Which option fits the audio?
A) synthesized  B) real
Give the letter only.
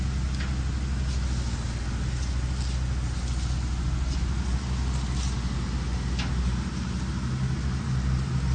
B